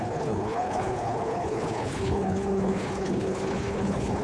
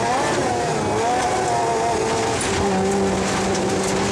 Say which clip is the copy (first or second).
first